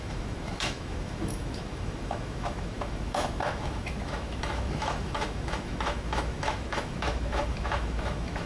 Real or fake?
fake